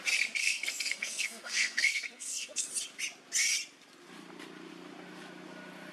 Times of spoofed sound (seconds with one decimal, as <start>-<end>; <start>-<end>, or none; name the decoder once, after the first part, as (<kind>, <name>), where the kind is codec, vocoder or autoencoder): 0.4-2.7 (codec, SNAC)